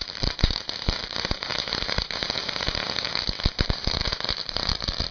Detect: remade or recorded remade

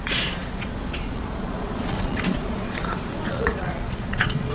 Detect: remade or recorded remade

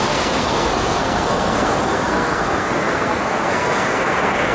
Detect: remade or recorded remade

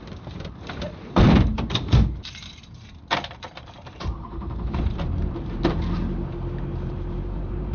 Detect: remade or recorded remade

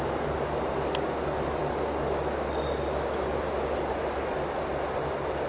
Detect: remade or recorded recorded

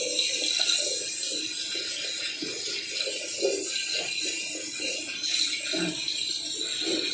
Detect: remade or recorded recorded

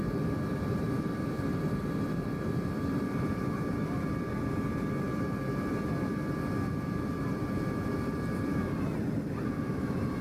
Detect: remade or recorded recorded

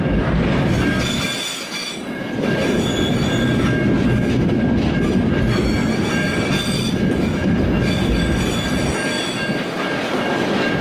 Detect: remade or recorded recorded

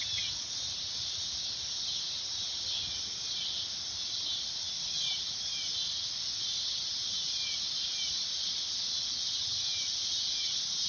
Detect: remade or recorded recorded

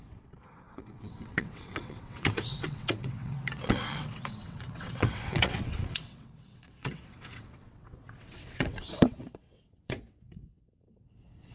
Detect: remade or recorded remade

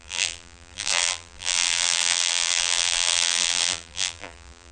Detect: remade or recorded remade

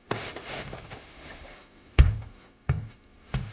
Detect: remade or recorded remade